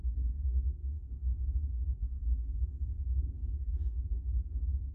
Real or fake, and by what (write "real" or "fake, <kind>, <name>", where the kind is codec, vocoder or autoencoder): fake, codec, SNAC